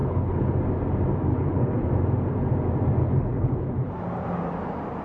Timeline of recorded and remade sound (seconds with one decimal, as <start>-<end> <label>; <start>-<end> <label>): 0.0-0.5 remade; 0.5-1.3 recorded; 1.3-1.9 remade; 1.9-3.0 recorded; 3.0-3.9 remade; 3.9-5.0 recorded